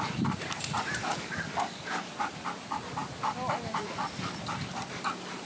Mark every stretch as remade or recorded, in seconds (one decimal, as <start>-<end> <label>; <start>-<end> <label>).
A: 0.0-1.1 recorded; 1.1-2.1 remade; 2.1-5.5 recorded